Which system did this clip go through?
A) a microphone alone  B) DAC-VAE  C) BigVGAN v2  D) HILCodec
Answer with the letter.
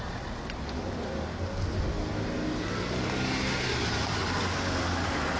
A